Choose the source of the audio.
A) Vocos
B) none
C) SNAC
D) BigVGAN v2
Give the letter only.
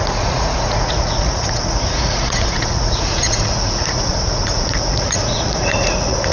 A